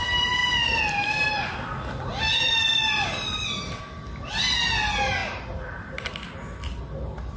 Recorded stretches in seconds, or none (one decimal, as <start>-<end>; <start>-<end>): 0.0-7.4